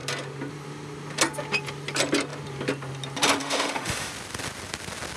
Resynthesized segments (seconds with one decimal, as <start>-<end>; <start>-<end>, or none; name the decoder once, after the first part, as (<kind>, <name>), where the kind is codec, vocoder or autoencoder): 3.4-4.1 (autoencoder, DAC-VAE)